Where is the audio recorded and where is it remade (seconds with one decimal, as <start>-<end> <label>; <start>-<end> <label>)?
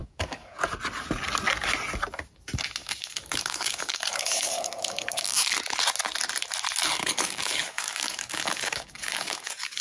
0.0-0.7 remade; 0.7-2.8 recorded; 2.8-5.5 remade; 5.5-7.0 recorded; 7.0-9.8 remade